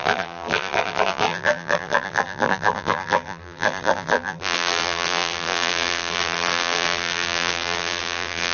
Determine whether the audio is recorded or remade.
remade